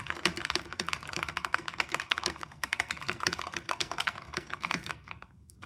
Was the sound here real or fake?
fake